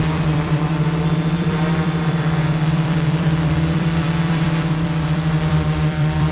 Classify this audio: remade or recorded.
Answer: remade